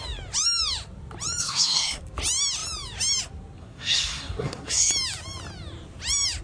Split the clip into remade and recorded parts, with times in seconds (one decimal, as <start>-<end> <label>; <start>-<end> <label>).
0.0-1.4 recorded; 1.4-2.0 remade; 2.0-3.6 recorded; 3.6-4.9 remade; 4.9-6.4 recorded